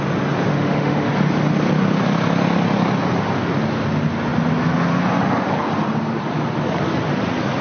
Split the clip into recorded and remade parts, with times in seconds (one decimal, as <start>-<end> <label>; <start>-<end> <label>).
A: 0.0-0.5 recorded; 0.5-1.1 remade; 1.1-7.6 recorded